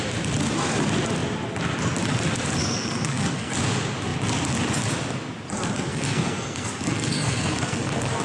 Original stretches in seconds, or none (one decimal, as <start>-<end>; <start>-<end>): 0.0-2.6; 3.5-5.9